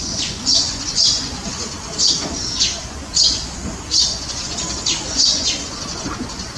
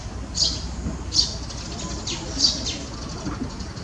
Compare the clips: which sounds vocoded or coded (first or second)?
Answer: first